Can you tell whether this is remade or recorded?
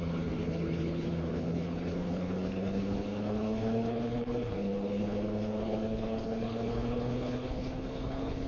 remade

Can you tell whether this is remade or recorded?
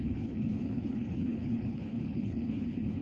remade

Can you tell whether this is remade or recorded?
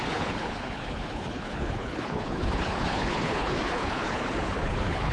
remade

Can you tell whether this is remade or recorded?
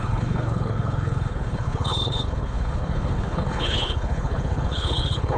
remade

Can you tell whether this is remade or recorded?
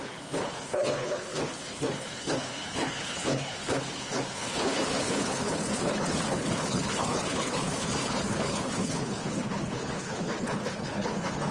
remade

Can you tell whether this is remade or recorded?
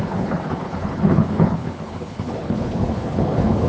remade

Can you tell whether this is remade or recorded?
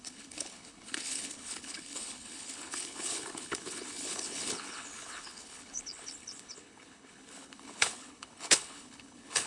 remade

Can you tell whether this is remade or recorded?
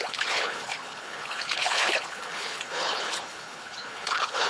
remade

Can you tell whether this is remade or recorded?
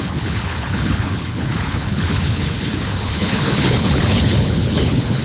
remade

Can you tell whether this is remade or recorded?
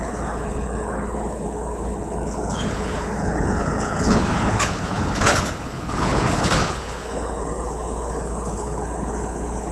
remade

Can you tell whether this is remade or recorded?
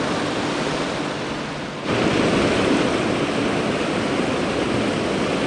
recorded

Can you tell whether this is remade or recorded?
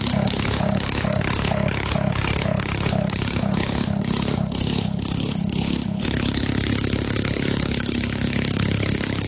remade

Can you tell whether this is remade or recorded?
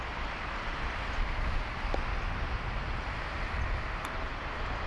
recorded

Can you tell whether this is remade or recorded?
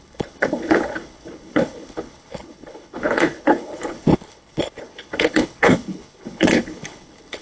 remade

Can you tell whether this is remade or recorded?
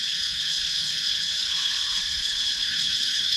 remade